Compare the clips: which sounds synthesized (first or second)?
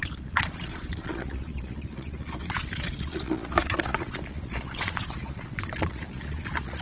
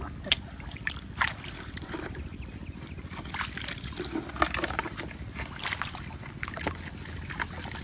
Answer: first